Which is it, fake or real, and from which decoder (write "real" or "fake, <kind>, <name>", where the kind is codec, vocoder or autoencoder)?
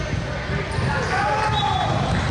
real